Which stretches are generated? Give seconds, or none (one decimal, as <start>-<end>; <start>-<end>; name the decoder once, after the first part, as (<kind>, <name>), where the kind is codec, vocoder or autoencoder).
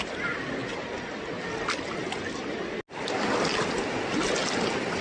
none